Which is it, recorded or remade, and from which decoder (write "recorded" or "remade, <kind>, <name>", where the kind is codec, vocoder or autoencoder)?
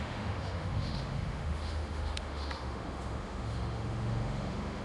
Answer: remade, autoencoder, DAC-VAE